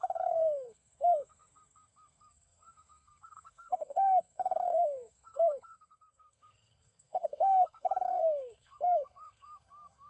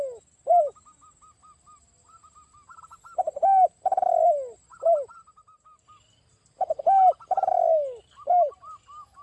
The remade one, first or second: first